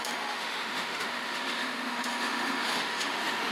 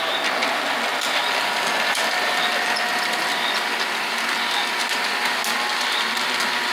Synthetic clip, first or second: first